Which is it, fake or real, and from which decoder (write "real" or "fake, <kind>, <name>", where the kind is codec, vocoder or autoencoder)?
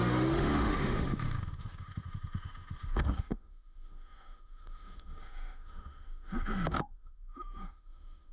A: fake, autoencoder, DAC-VAE